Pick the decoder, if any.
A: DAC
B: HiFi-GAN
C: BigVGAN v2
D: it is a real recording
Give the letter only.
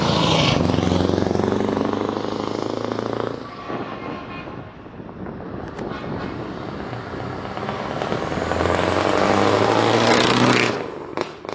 D